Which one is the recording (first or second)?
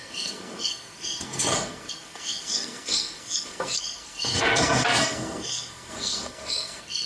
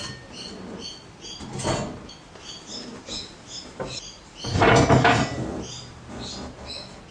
second